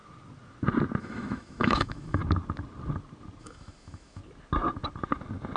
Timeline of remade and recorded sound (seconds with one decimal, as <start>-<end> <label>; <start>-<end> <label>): 0.0-1.0 recorded; 1.0-2.2 remade; 2.2-3.4 recorded; 3.4-4.2 remade; 4.2-5.6 recorded